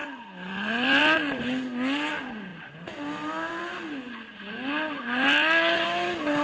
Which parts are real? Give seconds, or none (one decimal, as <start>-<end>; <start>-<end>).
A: 0.0-6.4